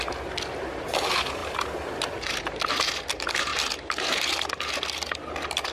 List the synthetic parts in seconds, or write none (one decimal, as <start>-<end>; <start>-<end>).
none